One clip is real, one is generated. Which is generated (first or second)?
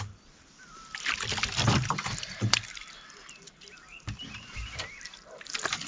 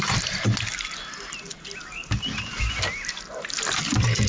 first